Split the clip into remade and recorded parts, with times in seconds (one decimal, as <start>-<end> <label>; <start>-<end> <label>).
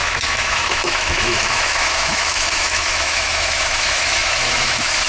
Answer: 0.0-5.1 remade